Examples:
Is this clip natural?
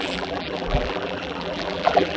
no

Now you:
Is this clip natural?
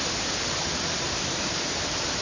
no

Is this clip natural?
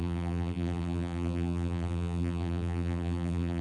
no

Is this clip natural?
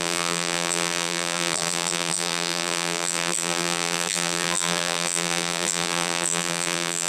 no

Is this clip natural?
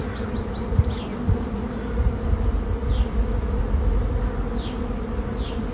yes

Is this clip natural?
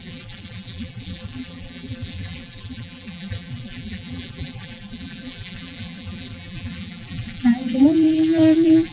no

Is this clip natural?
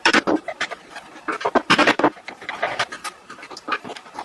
no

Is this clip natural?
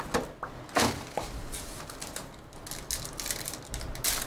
yes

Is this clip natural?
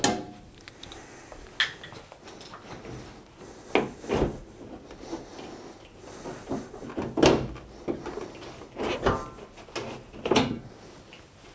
yes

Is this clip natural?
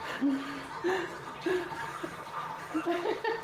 no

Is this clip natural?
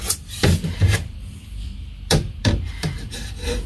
no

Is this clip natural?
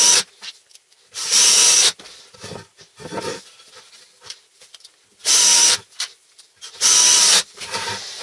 no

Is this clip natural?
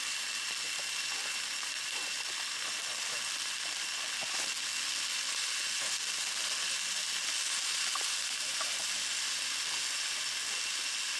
yes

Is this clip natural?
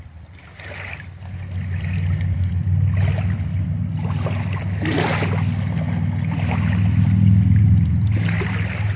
yes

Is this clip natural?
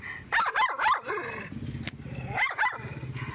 no